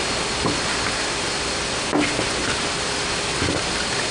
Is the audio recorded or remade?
recorded